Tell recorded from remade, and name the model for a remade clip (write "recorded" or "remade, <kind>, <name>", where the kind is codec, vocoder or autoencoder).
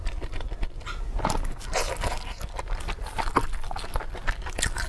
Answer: recorded